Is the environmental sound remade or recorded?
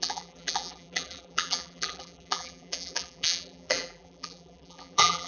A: remade